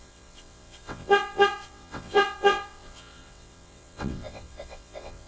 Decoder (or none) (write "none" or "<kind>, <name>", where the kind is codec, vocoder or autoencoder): vocoder, WaveNeXt